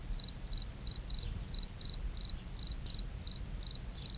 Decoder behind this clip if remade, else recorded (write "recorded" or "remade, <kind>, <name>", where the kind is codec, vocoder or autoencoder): recorded